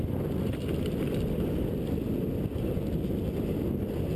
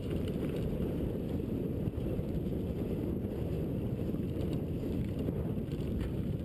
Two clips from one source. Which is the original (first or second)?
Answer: first